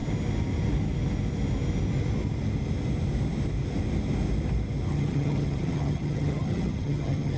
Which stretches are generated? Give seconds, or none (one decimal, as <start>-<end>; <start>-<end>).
4.9-7.4

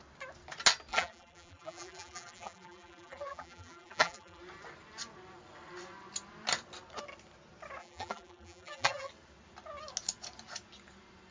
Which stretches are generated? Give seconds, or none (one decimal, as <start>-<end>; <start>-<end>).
0.9-4.4; 7.8-9.1

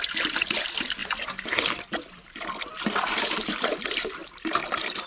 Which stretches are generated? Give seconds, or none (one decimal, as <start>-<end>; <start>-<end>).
0.0-1.0; 1.7-2.7; 3.5-5.1

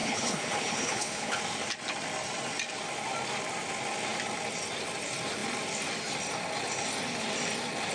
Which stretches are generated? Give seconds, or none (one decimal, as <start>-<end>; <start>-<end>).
0.0-1.4

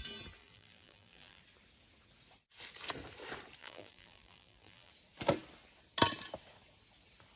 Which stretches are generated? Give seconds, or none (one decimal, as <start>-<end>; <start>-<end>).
0.4-1.4; 3.6-4.9